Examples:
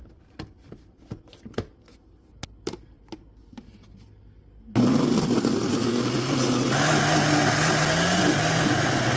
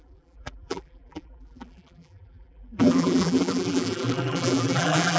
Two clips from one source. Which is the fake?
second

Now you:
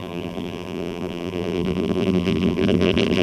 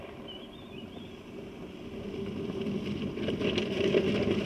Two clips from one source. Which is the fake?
first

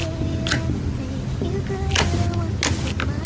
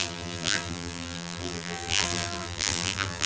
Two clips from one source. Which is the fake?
second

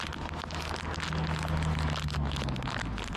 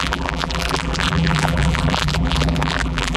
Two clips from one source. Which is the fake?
second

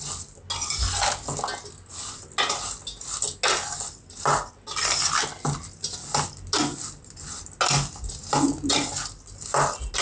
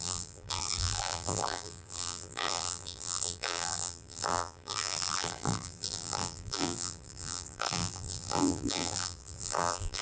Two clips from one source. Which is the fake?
second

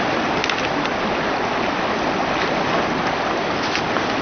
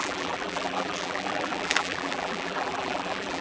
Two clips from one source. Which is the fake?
second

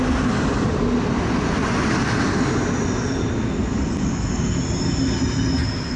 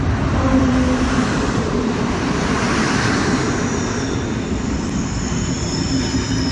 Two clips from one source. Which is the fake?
second